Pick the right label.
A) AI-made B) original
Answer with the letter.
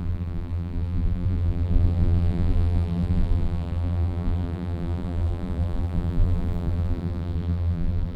A